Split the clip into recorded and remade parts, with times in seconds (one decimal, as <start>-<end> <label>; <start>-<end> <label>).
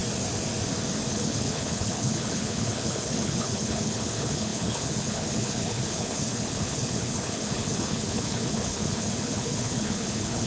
0.0-1.1 recorded; 1.1-10.5 remade